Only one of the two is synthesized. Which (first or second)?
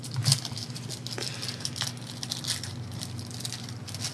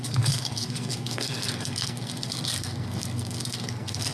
second